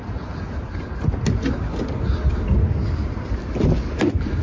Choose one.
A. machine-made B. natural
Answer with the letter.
B